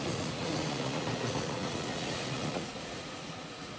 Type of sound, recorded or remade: remade